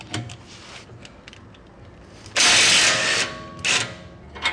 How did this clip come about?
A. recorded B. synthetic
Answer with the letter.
A